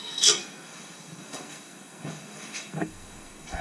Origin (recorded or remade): remade